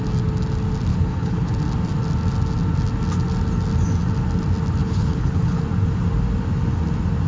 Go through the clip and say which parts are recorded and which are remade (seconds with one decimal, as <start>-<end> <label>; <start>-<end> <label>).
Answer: 0.0-0.9 recorded; 0.9-1.5 remade; 1.5-4.8 recorded; 4.8-5.6 remade; 5.6-7.3 recorded